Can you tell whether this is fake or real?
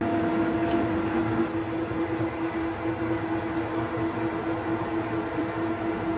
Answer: fake